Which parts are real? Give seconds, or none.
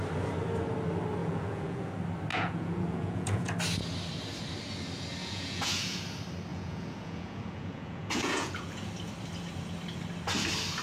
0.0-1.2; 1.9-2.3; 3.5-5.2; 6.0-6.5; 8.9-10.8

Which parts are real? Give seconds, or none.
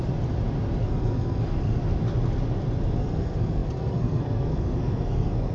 0.0-0.8; 1.8-3.0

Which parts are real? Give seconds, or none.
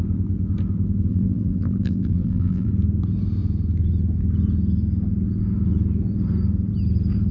0.0-1.1; 2.7-7.3